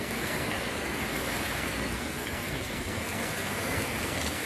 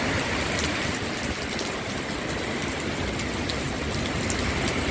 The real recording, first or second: second